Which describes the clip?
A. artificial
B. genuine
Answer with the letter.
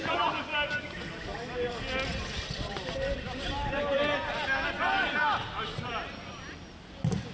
B